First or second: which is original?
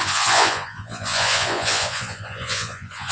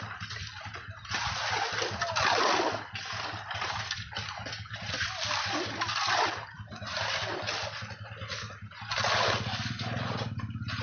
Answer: second